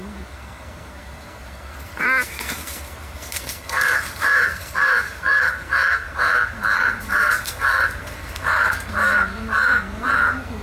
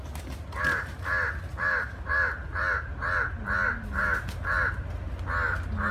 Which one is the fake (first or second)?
first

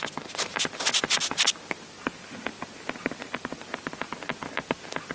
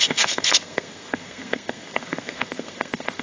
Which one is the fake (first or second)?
second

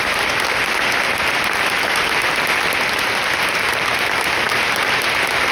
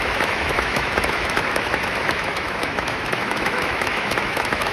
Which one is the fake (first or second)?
second